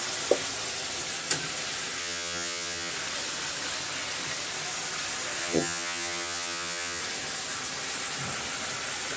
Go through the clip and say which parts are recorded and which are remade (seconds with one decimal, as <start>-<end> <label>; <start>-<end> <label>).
0.0-2.0 recorded; 2.0-2.9 remade; 2.9-5.4 recorded; 5.4-7.0 remade; 7.0-9.2 recorded